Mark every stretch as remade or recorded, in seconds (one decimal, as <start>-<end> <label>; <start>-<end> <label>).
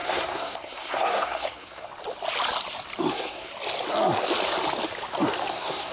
0.0-1.9 remade; 1.9-3.1 recorded; 3.1-3.5 remade; 3.5-5.5 recorded; 5.5-5.9 remade